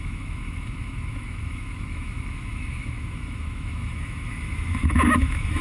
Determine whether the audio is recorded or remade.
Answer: remade